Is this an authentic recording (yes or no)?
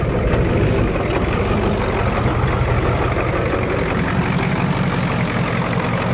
yes